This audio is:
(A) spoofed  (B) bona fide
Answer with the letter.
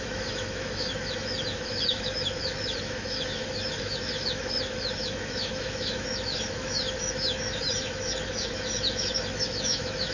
A